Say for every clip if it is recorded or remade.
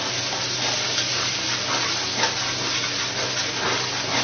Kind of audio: recorded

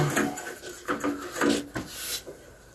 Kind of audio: recorded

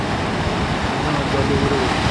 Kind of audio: recorded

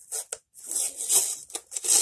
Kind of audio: recorded